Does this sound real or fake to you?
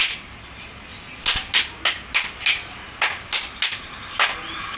real